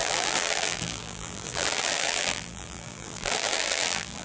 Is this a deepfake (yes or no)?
yes